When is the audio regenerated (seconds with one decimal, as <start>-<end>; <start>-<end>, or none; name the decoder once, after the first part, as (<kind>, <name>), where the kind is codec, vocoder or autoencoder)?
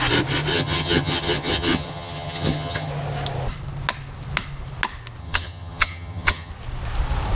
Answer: 0.5-2.9 (vocoder, HiFi-GAN); 5.2-6.5